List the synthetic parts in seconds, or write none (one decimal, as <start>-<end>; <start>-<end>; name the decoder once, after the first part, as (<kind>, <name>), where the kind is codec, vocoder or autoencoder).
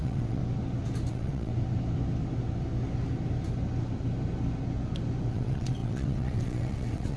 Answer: 0.0-0.4 (vocoder, WaveNeXt); 1.1-1.5; 5.3-7.2